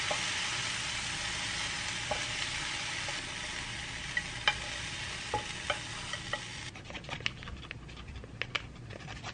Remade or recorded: recorded